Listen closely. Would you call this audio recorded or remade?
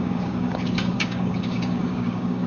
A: remade